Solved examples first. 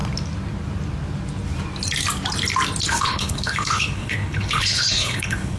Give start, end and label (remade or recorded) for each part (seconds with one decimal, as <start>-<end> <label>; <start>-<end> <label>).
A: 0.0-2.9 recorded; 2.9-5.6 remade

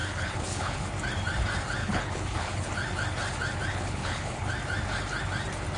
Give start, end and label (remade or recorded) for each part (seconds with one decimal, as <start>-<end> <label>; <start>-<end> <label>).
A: 0.0-0.9 remade; 0.9-1.8 recorded; 1.8-2.7 remade; 2.7-3.7 recorded; 3.7-4.5 remade; 4.5-5.8 recorded

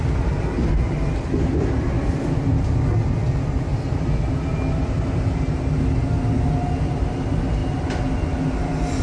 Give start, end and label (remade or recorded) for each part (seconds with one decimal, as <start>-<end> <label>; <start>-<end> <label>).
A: 0.0-9.0 recorded

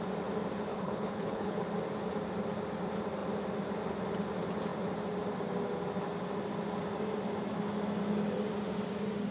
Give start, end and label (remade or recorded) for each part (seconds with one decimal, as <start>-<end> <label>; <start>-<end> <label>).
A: 0.0-0.7 recorded; 0.7-1.6 remade; 1.6-9.3 recorded